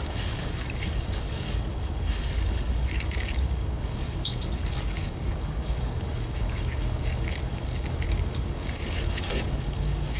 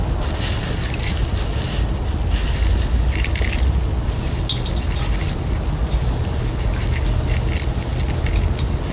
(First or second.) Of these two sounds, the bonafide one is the second